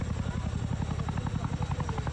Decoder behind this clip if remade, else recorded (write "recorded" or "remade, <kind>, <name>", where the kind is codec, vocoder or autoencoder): recorded